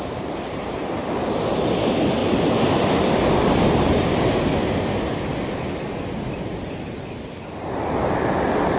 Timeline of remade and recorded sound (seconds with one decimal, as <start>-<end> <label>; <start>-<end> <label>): 0.0-8.8 recorded